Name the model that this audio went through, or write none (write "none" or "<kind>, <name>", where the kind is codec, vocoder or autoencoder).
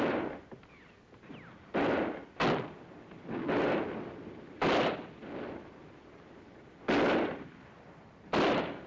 none